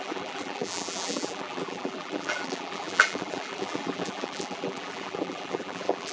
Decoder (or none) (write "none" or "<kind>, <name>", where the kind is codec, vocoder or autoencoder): vocoder, BigVGAN v2